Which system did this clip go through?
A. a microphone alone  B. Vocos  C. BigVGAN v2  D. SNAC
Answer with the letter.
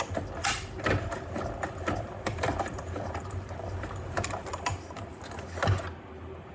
A